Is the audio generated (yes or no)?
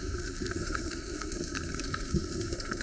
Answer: yes